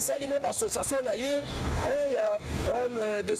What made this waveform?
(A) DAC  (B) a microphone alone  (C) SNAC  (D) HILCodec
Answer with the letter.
A